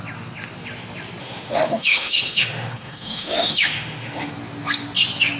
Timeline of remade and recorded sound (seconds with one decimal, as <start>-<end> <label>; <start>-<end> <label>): 0.0-1.2 recorded; 1.2-4.3 remade; 4.3-5.4 recorded